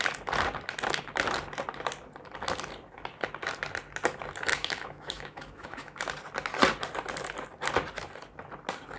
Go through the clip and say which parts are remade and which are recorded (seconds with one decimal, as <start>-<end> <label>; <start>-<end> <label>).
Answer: 0.0-4.5 recorded; 4.5-6.0 remade; 6.0-9.0 recorded

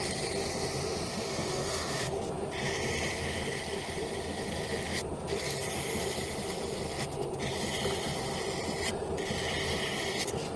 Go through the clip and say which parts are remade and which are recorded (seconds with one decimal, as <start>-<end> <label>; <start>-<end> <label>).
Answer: 0.0-1.1 recorded; 1.1-2.1 remade; 2.1-10.6 recorded

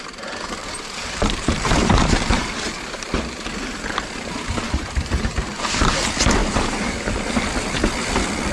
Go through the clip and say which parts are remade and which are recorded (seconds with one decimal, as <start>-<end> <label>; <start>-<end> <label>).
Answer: 0.0-0.6 recorded; 0.6-5.7 remade; 5.7-6.4 recorded; 6.4-7.1 remade; 7.1-8.5 recorded

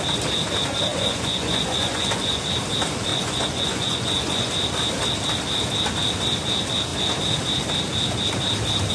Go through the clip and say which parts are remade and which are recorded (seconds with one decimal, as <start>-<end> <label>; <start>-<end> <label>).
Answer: 0.0-0.9 recorded; 0.9-2.4 remade; 2.4-3.1 recorded; 3.1-4.5 remade; 4.5-8.9 recorded